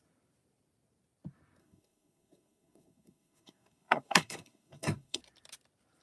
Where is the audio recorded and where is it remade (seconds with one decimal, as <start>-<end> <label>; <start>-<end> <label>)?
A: 0.0-1.6 recorded; 1.6-5.2 remade; 5.2-6.0 recorded